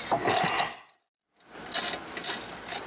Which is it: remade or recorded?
recorded